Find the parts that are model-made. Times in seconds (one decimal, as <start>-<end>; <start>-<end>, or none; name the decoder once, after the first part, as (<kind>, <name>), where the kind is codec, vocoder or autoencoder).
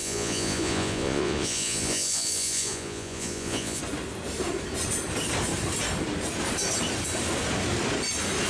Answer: 0.0-3.8 (vocoder, Vocos)